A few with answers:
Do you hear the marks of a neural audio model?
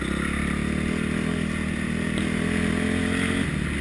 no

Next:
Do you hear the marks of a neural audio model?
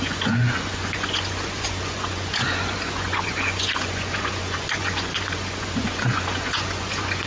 yes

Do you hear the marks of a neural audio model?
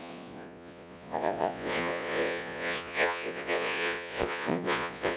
yes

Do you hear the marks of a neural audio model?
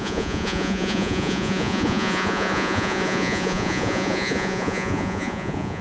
yes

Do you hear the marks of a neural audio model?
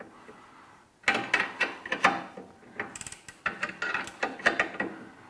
no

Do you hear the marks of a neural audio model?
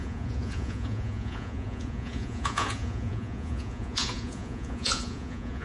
yes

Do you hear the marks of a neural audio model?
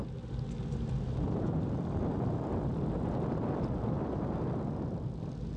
no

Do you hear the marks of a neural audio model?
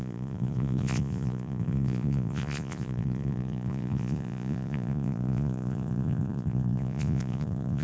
yes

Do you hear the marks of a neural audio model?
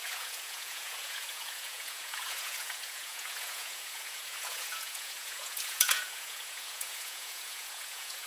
yes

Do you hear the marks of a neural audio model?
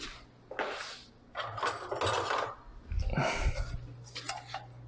no